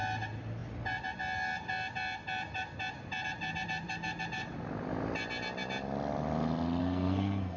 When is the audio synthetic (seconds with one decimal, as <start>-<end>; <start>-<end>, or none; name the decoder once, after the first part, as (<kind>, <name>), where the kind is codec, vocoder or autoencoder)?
6.8-7.6 (codec, SNAC)